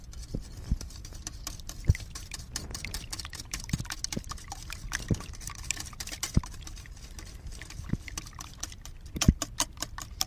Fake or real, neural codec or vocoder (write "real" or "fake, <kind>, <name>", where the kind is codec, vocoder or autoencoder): real